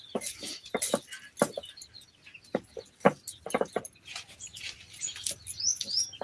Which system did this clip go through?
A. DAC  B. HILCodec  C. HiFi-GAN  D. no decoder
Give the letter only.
D